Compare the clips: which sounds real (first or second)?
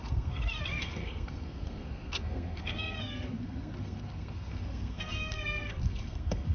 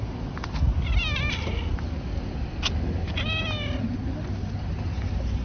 second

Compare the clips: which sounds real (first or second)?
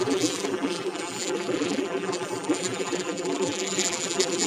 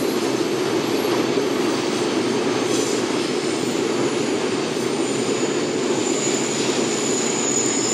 second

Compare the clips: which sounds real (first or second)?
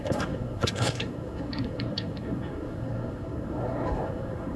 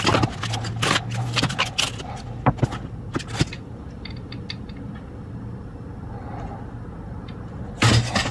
second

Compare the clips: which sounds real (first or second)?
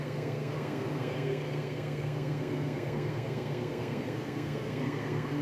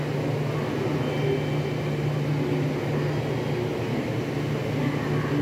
second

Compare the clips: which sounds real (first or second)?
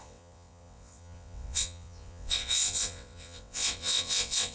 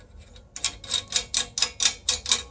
second